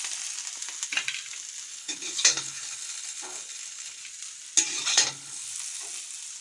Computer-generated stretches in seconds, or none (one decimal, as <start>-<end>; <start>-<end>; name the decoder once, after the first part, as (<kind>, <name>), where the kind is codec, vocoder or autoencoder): 1.7-4.0 (codec, HILCodec); 4.9-5.5